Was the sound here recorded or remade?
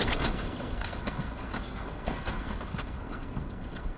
remade